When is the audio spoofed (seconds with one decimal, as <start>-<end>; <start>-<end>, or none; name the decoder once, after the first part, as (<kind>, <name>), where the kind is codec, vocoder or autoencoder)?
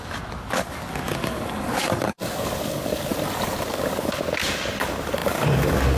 0.0-3.1 (codec, DAC); 3.7-6.0